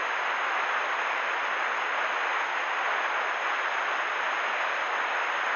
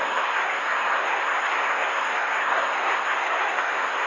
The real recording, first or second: first